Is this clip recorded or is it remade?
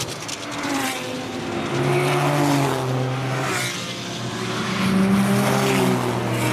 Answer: recorded